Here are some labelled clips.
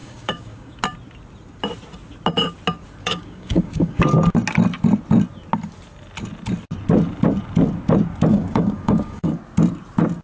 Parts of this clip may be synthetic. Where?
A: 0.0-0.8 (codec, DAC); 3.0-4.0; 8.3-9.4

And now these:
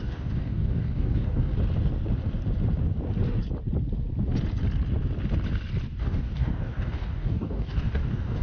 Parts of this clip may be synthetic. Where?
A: 0.0-1.5 (codec, DAC); 6.0-8.4

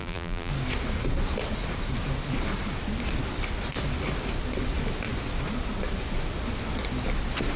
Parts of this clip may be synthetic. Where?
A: 0.0-0.5 (vocoder, BigVGAN v2)

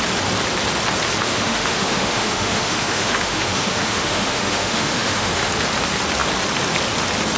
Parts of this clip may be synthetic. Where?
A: 1.2-5.5 (autoencoder, DAC-VAE)